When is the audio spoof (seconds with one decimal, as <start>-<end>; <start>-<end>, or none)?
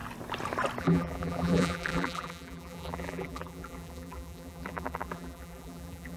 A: 0.8-6.2